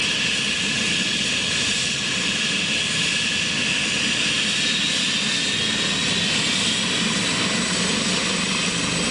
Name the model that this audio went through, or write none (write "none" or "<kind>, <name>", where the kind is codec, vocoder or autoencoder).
none